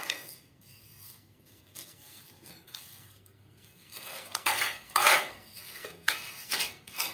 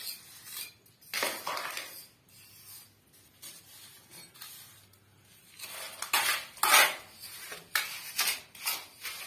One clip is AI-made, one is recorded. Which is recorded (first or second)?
second